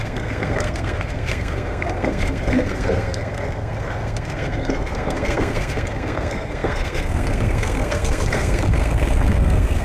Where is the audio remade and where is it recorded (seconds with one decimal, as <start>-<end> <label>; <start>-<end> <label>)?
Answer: 0.0-9.8 remade

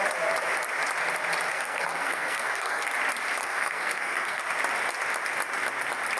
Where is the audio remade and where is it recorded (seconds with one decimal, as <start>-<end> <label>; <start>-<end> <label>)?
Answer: 0.0-1.5 recorded; 1.5-2.9 remade; 2.9-3.4 recorded; 3.4-4.4 remade; 4.4-6.2 recorded

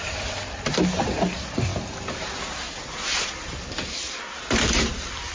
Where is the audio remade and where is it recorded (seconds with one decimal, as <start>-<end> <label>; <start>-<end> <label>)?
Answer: 0.0-5.3 recorded

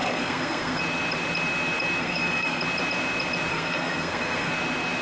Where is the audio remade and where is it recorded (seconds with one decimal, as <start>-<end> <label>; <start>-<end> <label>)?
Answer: 0.0-0.8 remade; 0.8-2.0 recorded; 2.0-2.6 remade; 2.6-3.5 recorded; 3.5-4.5 remade; 4.5-5.0 recorded

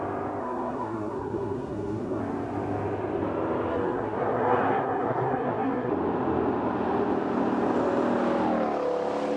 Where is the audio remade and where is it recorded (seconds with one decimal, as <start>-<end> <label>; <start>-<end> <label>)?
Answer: 0.0-0.4 recorded; 0.4-2.2 remade; 2.2-3.7 recorded; 3.7-5.9 remade; 5.9-9.4 recorded